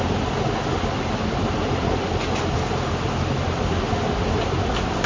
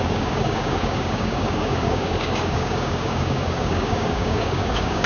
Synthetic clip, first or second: second